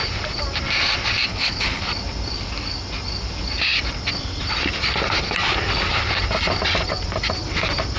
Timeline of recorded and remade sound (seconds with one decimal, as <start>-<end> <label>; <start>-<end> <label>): 0.0-1.3 recorded; 1.3-1.8 remade; 1.8-8.0 recorded